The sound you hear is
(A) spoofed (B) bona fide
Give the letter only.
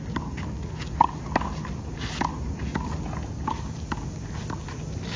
B